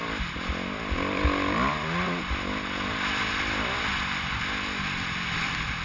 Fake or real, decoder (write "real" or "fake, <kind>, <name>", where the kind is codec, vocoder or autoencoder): real